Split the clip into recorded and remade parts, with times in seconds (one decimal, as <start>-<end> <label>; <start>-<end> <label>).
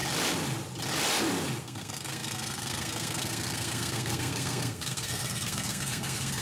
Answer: 0.0-1.6 recorded; 1.6-6.4 remade